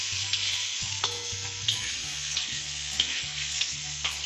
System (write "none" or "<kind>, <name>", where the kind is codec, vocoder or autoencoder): codec, SNAC